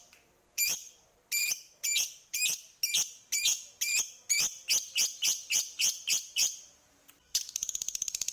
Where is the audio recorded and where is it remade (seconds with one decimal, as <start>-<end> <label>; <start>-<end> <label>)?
0.0-0.7 remade; 0.7-5.1 recorded; 5.1-8.3 remade